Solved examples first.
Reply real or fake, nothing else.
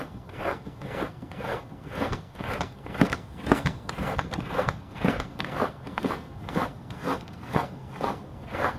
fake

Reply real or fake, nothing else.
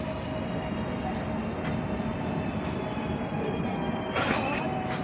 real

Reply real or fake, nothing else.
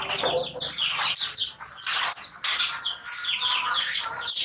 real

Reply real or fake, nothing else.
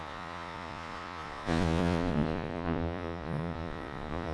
fake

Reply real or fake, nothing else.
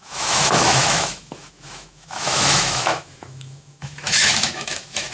fake